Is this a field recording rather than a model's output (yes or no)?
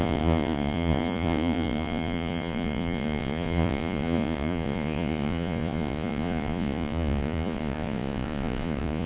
no